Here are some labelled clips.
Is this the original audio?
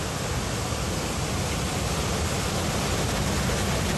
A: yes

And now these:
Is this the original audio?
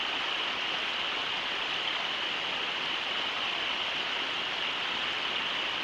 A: yes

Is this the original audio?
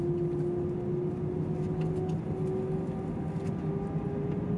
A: yes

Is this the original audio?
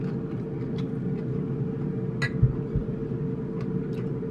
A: yes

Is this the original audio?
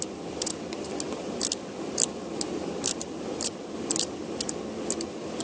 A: yes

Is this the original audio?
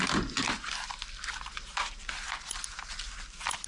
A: no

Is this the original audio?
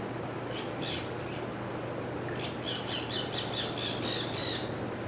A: yes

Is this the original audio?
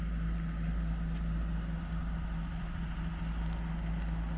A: yes